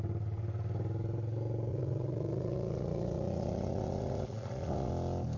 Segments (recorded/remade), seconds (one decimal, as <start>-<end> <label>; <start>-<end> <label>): 0.0-1.7 recorded; 1.7-4.9 remade; 4.9-5.4 recorded

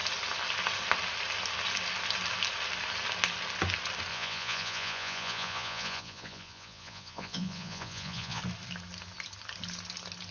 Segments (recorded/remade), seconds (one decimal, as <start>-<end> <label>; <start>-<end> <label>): 0.0-4.1 recorded; 4.1-8.4 remade; 8.4-10.3 recorded